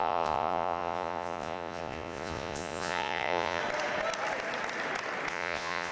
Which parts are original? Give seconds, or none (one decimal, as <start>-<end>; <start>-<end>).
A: 3.6-5.3